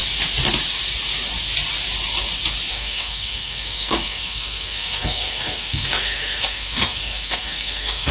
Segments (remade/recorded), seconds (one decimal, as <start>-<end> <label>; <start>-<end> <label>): 0.0-2.7 recorded; 2.7-8.1 remade